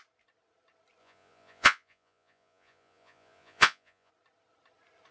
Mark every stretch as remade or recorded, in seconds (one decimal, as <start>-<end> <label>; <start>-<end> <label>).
0.0-1.0 recorded; 1.0-4.1 remade; 4.1-5.1 recorded